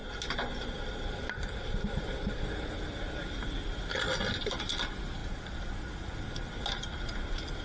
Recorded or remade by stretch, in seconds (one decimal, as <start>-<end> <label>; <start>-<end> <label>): 0.0-7.6 recorded